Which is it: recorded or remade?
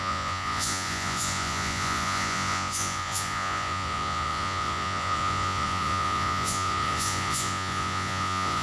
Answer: remade